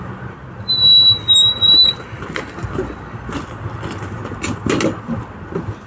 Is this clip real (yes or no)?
yes